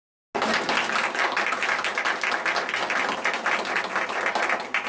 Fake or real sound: real